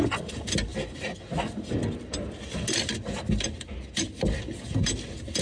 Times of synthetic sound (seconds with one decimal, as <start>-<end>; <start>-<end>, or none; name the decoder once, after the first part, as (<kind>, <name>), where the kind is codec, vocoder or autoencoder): none